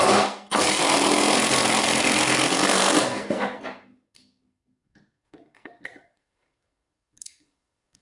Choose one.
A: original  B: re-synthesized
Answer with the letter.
B